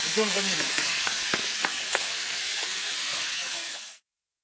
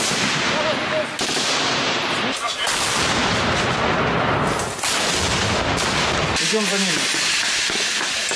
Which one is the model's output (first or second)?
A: first